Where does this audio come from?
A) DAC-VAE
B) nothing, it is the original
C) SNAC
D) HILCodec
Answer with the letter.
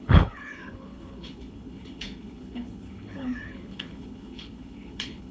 D